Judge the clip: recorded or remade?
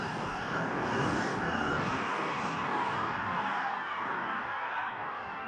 remade